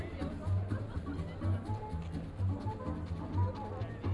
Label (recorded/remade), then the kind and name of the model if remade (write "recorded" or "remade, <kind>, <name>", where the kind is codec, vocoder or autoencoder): recorded